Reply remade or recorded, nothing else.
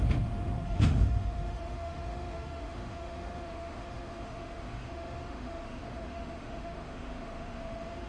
remade